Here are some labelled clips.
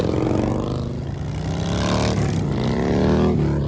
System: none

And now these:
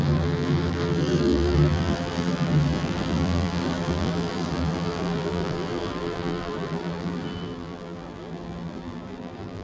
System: vocoder, BigVGAN v2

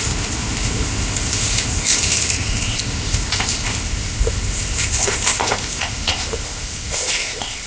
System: codec, ZipCodec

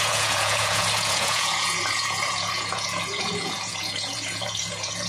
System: vocoder, Vocos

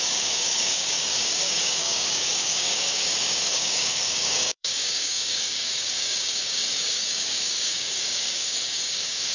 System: codec, DAC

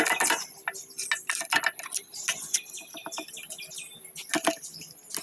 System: none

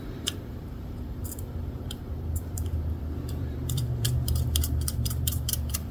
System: vocoder, BigVGAN v2